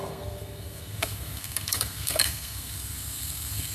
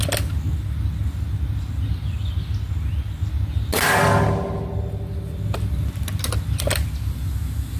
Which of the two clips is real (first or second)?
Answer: second